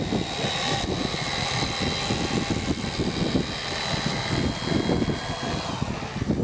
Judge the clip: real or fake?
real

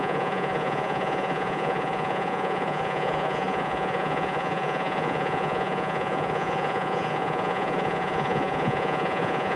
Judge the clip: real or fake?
fake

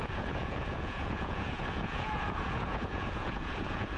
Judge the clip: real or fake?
fake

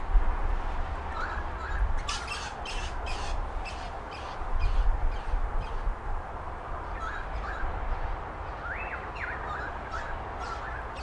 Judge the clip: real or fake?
real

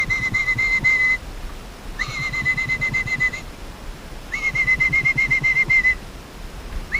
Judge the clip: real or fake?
real